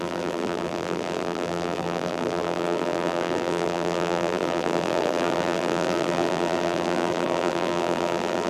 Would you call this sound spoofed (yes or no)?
yes